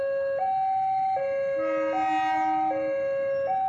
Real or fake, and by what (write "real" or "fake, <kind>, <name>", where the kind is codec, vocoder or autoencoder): real